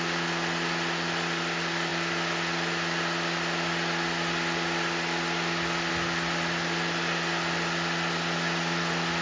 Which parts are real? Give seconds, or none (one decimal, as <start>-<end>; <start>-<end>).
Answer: 0.0-9.2